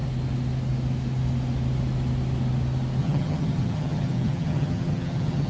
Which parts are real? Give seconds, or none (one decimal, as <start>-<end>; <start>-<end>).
0.0-3.0